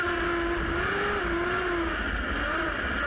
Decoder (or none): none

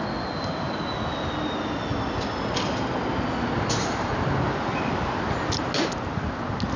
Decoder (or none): none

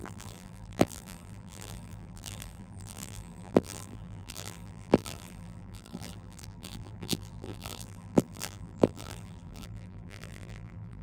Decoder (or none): vocoder, BigVGAN v2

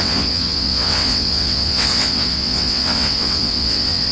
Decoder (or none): vocoder, WaveNeXt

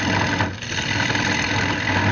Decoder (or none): none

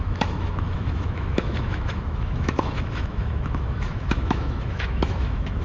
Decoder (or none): autoencoder, DAC-VAE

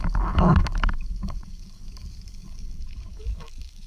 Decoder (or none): codec, DAC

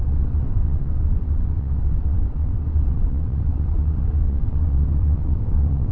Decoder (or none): vocoder, WaveNeXt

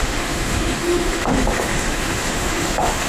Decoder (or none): autoencoder, DAC-VAE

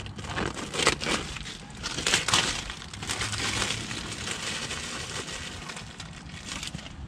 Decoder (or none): none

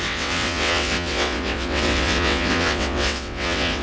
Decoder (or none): vocoder, WaveNeXt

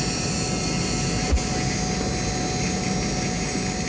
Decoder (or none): none